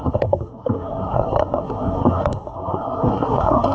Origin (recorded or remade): remade